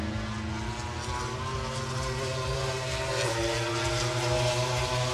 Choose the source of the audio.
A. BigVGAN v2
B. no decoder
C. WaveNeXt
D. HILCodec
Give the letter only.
B